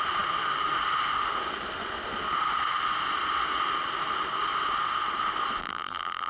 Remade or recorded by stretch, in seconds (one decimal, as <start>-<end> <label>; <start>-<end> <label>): 0.0-5.6 recorded; 5.6-6.3 remade